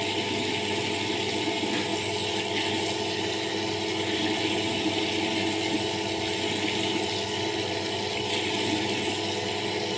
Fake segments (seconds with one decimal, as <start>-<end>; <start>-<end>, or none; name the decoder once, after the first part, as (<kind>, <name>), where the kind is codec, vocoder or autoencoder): none